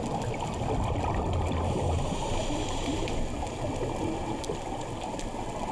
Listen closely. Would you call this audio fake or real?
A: real